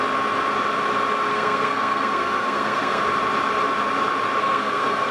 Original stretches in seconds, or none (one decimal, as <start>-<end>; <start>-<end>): 0.0-1.3; 3.0-4.4